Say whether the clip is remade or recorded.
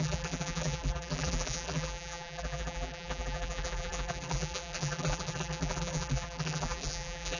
remade